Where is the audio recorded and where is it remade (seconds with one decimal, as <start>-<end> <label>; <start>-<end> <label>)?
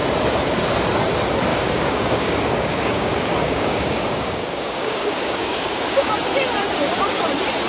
0.0-1.5 recorded; 1.5-6.1 remade; 6.1-7.7 recorded